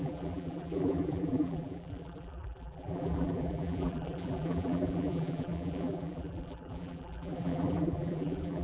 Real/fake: fake